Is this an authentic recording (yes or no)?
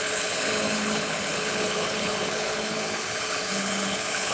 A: no